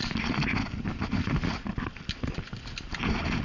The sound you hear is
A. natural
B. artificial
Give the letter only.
A